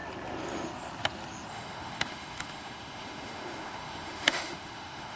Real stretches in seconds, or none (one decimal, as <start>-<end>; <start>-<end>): 0.0-1.5